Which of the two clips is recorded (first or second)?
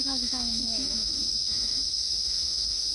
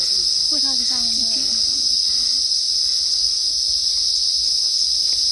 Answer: second